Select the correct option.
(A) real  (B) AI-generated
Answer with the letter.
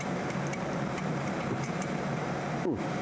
B